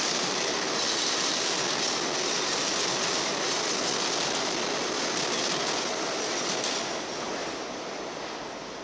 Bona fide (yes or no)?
yes